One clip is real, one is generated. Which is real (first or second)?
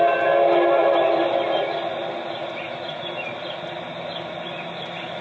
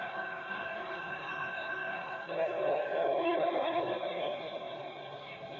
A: first